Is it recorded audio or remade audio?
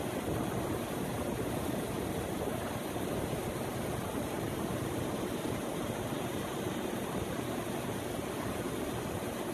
recorded